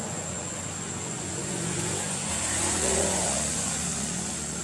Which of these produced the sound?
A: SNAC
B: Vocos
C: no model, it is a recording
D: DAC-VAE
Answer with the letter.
B